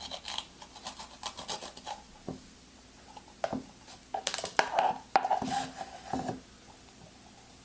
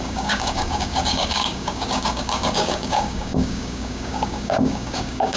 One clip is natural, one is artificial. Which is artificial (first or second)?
second